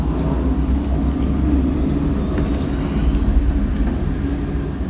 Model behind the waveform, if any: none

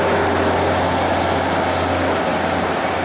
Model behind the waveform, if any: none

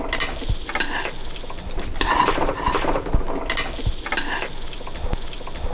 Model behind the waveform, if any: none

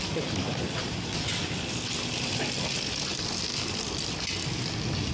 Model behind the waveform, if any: none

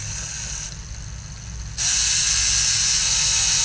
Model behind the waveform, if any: none